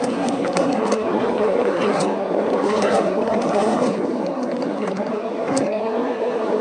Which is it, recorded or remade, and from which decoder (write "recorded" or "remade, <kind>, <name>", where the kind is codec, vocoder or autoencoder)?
remade, codec, SNAC